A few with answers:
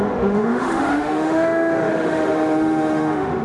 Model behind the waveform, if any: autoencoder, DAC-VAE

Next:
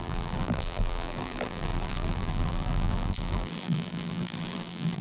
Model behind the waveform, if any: vocoder, BigVGAN v2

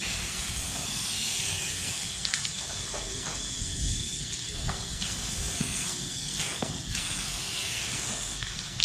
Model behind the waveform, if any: codec, SNAC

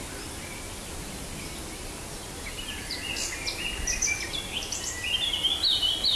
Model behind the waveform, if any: none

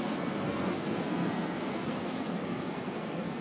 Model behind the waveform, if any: codec, SNAC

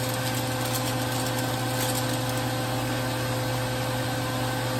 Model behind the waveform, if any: none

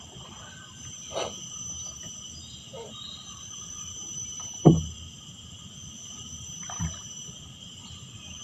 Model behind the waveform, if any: vocoder, BigVGAN v2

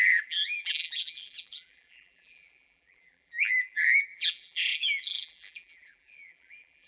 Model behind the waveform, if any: vocoder, BigVGAN v2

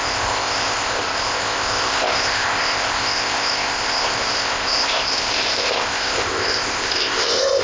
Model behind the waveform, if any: codec, ZipCodec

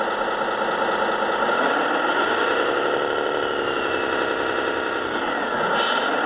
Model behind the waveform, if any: none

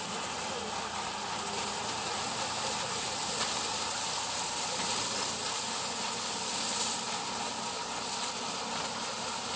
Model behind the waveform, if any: none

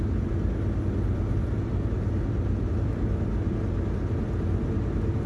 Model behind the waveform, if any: none